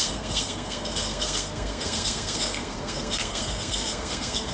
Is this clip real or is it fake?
fake